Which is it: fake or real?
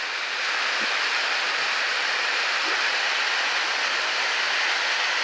real